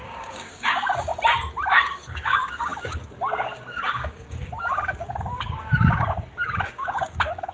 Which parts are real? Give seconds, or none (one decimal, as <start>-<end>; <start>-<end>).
1.1-1.7